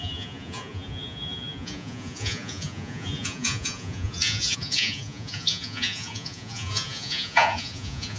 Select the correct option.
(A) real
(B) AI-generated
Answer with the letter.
B